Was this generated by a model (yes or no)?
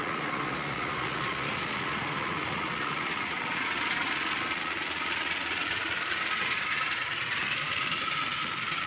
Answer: yes